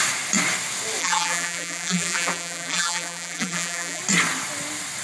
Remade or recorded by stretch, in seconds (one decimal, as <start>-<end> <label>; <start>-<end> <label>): 0.0-1.0 recorded; 1.0-4.0 remade; 4.0-5.0 recorded